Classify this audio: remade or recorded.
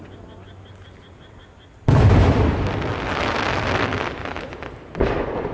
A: recorded